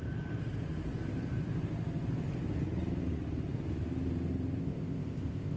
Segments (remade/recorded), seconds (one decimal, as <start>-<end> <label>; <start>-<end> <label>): 0.0-4.6 recorded; 4.6-5.6 remade